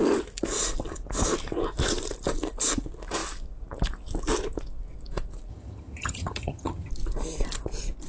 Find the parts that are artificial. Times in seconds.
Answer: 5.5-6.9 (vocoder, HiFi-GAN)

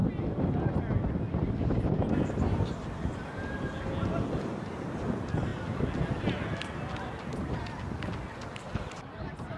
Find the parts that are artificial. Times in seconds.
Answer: none

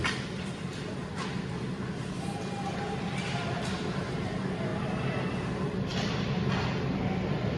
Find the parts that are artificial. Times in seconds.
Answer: none

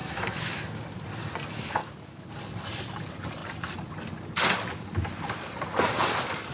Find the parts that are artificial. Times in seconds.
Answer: 0.0-0.8 (autoencoder, DAC-VAE); 1.8-2.3